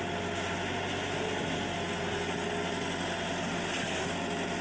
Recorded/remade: recorded